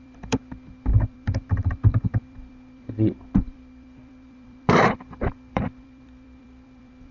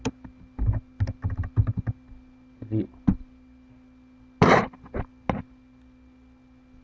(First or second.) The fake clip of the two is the first